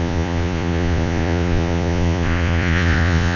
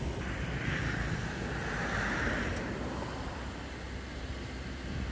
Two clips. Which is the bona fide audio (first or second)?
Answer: second